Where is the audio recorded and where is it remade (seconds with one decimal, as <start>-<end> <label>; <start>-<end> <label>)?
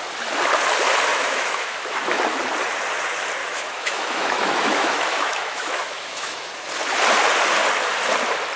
0.0-1.1 recorded; 1.1-2.2 remade; 2.2-3.4 recorded; 3.4-6.5 remade; 6.5-8.6 recorded